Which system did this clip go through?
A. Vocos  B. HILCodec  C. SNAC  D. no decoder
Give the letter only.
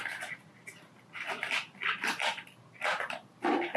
D